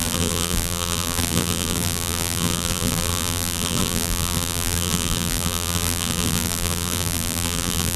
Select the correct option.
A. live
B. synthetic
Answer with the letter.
B